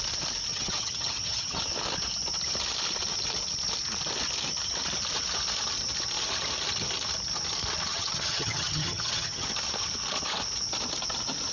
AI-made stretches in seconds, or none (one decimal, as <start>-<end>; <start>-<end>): 0.5-1.6; 7.9-9.5